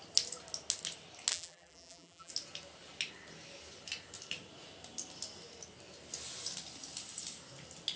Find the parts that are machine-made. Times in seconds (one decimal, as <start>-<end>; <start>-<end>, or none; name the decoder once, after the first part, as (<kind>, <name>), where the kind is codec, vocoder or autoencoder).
1.3-2.3 (vocoder, BigVGAN v2)